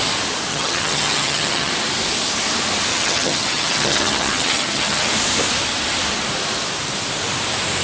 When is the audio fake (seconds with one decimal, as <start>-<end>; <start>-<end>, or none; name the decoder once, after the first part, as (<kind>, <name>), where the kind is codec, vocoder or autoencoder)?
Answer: 0.5-1.7 (vocoder, HiFi-GAN); 2.9-5.1